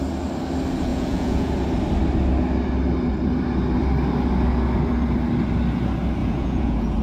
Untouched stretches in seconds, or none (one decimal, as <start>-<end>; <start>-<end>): 0.0-0.9; 1.5-6.2